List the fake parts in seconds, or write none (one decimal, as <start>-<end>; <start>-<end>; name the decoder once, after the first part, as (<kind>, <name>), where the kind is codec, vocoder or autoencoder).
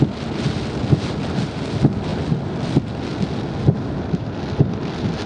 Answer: 2.1-2.7 (vocoder, BigVGAN v2)